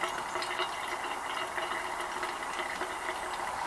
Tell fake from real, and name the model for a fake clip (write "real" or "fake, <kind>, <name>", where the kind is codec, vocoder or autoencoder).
real